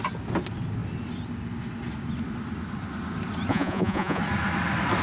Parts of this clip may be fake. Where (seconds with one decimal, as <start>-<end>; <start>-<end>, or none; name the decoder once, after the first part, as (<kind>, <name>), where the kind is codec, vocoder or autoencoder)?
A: 3.5-4.2 (vocoder, Vocos)

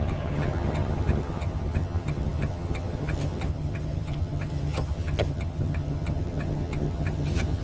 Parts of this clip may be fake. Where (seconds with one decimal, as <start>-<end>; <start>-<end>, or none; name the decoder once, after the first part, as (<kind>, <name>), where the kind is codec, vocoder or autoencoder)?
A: 0.0-7.6 (vocoder, HiFi-GAN)